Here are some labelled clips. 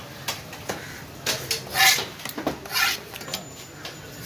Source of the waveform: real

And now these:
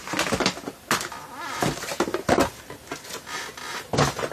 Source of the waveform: real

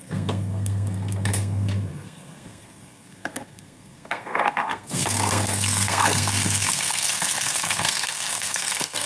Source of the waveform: fake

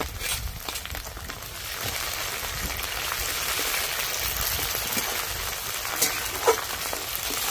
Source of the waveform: real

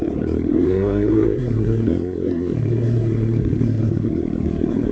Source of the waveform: fake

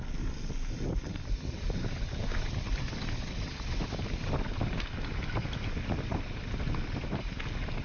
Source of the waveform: real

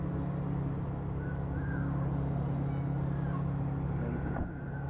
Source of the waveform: real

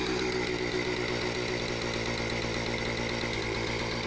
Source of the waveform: real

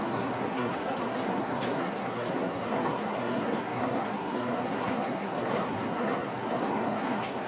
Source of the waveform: fake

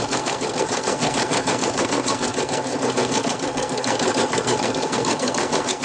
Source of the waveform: fake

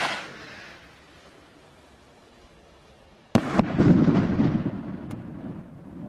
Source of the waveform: real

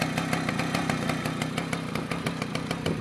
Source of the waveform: real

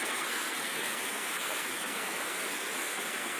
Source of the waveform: fake